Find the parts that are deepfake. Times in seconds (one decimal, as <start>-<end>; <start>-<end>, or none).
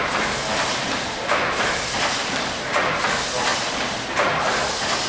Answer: 0.5-1.7; 2.2-3.1